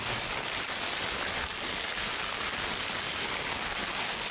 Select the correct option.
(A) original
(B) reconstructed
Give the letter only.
A